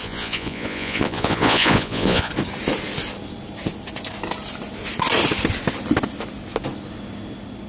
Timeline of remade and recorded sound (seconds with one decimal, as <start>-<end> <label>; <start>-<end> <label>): 0.0-2.3 remade; 2.3-7.7 recorded